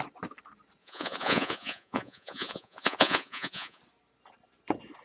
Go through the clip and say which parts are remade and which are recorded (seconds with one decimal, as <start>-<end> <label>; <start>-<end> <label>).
0.0-0.8 recorded; 0.8-3.8 remade; 3.8-5.0 recorded